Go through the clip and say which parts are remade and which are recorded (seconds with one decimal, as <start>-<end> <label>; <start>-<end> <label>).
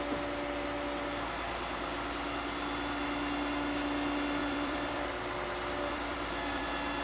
0.0-4.4 recorded; 4.4-6.6 remade; 6.6-7.0 recorded